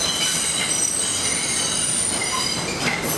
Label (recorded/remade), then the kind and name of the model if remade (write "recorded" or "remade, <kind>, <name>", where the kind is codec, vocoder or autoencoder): recorded